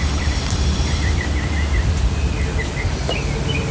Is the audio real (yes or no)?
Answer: no